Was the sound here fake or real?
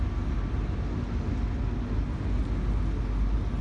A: real